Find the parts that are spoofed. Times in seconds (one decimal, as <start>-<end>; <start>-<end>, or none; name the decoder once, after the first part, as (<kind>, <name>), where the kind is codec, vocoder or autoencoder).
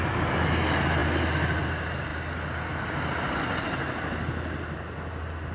none